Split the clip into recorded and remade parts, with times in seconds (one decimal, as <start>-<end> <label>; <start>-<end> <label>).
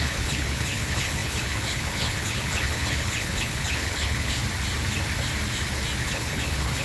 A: 0.0-4.4 remade; 4.4-6.0 recorded; 6.0-6.8 remade